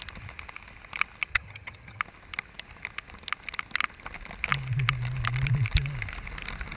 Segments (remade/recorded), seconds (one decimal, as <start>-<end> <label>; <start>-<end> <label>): 0.0-1.3 recorded; 1.3-2.0 remade; 2.0-6.8 recorded